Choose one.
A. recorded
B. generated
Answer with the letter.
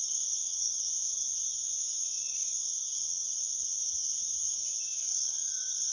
B